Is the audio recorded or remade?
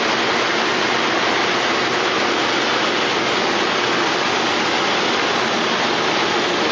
recorded